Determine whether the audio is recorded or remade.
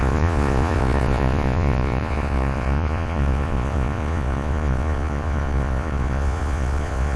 remade